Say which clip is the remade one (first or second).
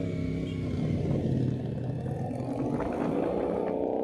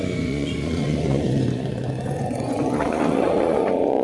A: second